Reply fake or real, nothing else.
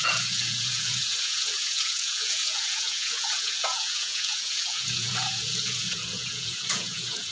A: fake